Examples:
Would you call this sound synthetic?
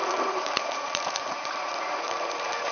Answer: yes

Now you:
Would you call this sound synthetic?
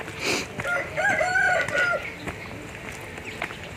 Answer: no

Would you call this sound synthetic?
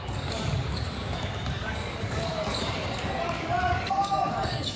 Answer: yes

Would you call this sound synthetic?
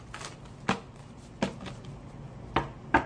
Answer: no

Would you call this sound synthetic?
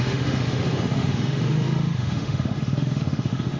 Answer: yes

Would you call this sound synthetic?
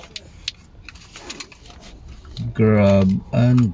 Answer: no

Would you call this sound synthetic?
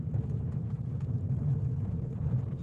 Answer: yes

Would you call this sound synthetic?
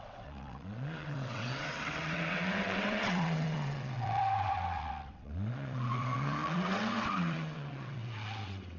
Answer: yes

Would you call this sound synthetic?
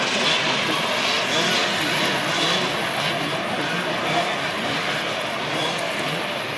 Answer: no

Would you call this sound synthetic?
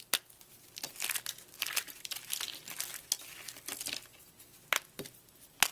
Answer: no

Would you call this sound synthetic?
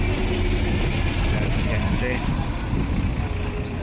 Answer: no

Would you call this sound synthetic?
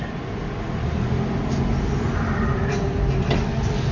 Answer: no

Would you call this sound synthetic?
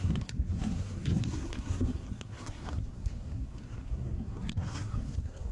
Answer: yes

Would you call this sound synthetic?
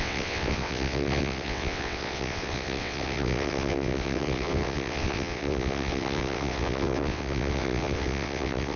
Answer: yes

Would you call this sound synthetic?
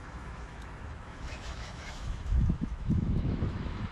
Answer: yes